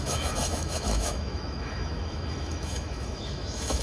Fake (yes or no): yes